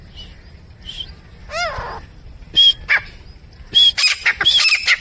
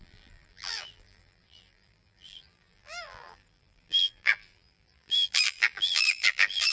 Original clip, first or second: first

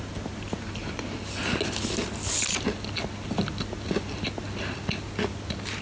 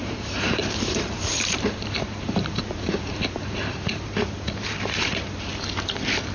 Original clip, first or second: first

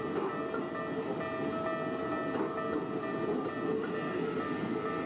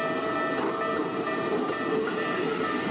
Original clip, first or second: first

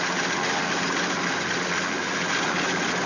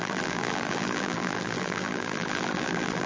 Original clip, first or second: first